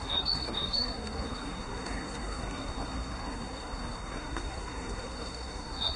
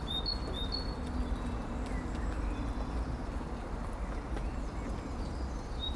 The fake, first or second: first